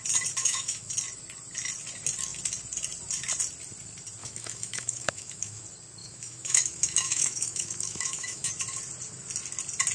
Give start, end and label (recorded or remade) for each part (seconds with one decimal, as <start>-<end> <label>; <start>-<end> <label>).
0.0-0.4 recorded; 0.4-0.9 remade; 0.9-4.2 recorded; 4.2-5.6 remade; 5.6-6.0 recorded; 6.0-8.5 remade; 8.5-9.9 recorded